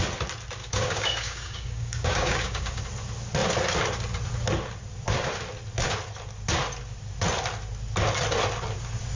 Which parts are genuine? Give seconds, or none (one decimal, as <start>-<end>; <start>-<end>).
0.0-0.6; 2.8-9.2